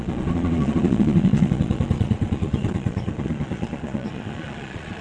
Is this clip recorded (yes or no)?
no